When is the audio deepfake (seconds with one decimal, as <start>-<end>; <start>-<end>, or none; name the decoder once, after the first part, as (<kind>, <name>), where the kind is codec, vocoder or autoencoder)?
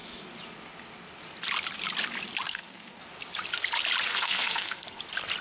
2.5-3.0 (codec, SNAC); 4.1-5.0